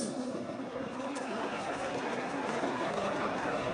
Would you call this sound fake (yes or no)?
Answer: yes